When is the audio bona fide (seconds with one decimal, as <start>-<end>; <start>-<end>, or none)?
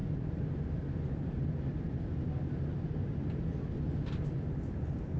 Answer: 1.8-5.2